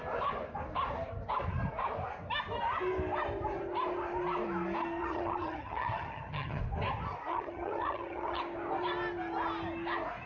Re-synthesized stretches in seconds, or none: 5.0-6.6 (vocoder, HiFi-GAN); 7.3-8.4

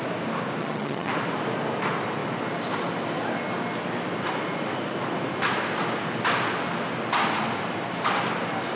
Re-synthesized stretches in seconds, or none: 0.6-1.1 (vocoder, HiFi-GAN)

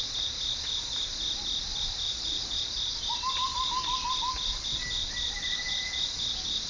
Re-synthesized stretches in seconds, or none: none